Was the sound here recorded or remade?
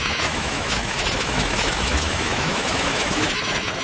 remade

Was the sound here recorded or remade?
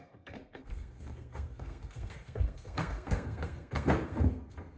remade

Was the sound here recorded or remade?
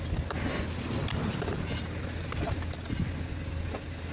recorded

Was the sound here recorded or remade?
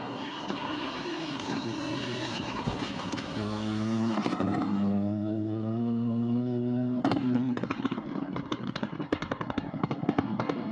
remade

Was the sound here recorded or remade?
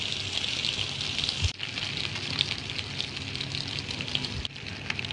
remade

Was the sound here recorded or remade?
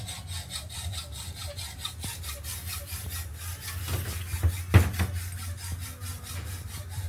recorded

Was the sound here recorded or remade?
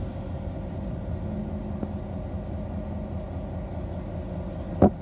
recorded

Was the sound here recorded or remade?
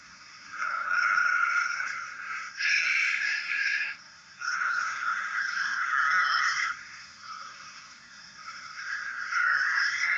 remade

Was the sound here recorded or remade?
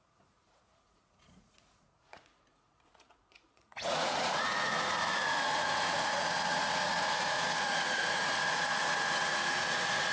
remade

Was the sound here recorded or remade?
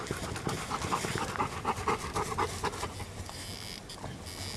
recorded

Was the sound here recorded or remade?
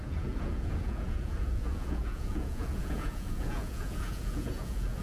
remade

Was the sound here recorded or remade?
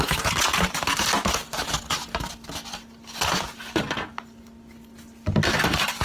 recorded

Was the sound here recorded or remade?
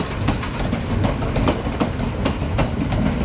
recorded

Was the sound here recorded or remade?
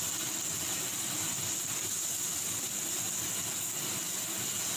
recorded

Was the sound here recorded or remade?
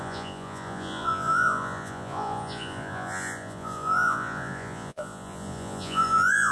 remade